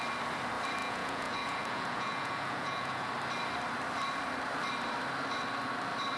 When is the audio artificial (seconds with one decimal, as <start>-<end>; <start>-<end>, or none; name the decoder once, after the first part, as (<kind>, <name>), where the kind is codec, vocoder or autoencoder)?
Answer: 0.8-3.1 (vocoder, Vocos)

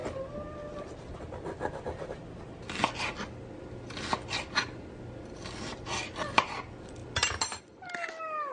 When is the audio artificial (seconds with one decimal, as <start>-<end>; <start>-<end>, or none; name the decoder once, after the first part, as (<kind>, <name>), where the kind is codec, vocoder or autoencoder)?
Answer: none

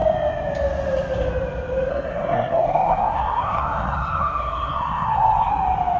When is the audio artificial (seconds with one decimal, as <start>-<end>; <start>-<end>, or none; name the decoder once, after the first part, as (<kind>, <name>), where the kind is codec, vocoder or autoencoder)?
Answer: 1.9-5.5 (codec, SNAC)

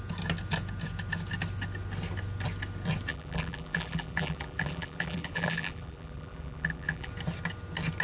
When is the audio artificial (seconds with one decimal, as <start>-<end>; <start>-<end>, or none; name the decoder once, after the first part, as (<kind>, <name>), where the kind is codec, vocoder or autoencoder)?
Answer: 3.1-7.1 (vocoder, BigVGAN v2)